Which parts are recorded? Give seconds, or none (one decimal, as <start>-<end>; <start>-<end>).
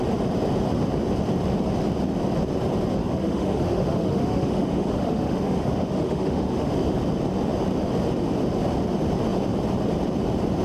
0.0-3.0; 6.7-10.6